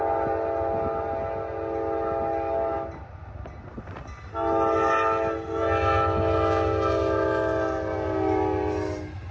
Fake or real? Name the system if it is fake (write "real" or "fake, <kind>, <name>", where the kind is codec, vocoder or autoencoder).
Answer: real